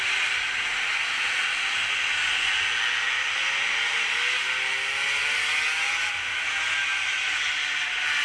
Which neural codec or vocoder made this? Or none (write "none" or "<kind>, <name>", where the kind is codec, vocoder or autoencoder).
none